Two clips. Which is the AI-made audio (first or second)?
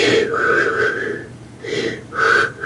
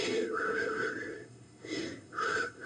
second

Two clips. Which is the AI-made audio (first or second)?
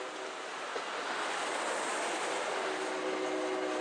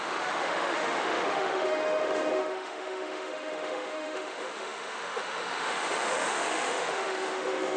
second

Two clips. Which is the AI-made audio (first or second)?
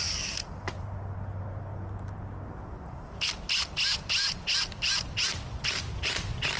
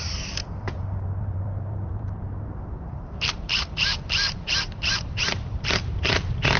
second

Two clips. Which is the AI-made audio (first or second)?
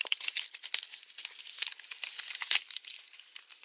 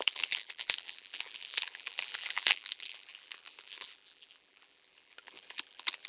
second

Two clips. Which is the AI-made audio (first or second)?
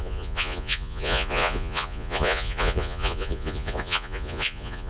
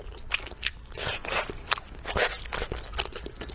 first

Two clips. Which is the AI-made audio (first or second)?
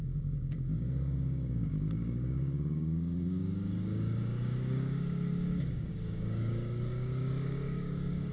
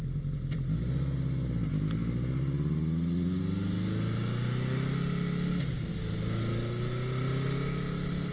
first